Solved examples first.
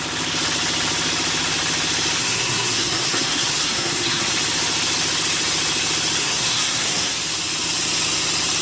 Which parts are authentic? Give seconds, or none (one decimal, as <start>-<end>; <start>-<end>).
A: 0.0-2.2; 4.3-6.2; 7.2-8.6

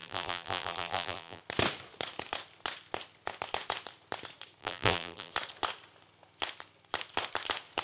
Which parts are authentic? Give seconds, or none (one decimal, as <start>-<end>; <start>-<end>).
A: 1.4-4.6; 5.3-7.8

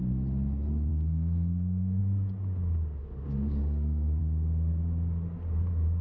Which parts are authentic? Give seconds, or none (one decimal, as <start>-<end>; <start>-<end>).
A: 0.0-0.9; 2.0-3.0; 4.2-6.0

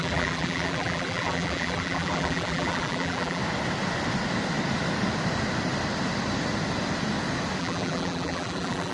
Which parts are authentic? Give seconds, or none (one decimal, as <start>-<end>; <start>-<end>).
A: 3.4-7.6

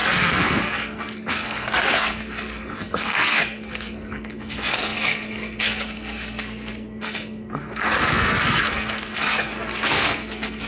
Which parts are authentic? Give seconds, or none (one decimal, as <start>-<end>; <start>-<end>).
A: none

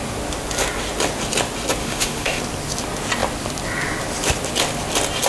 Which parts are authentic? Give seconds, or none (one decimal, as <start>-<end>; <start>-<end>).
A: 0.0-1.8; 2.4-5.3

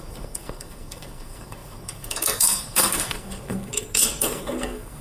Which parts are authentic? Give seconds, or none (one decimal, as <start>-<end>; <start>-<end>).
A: none